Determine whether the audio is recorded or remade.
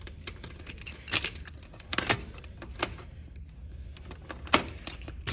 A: recorded